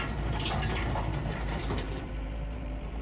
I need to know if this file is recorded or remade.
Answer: remade